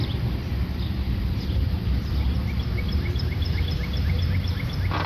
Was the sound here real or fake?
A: fake